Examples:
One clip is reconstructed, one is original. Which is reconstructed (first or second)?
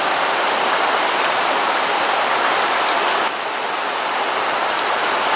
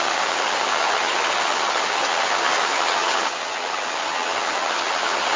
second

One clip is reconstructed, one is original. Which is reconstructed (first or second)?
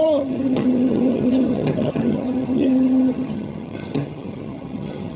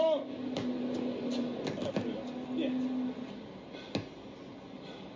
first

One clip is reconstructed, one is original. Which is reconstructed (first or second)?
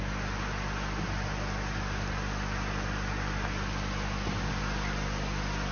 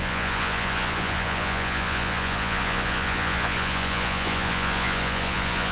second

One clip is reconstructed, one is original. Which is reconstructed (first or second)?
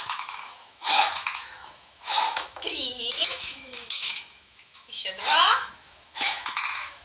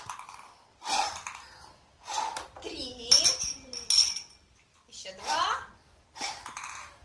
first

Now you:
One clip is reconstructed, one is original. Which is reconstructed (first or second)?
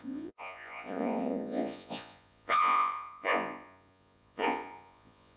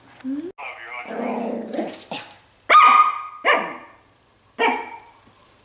first